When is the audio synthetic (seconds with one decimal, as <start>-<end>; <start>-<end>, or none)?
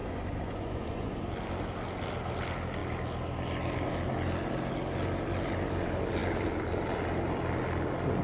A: 0.0-1.2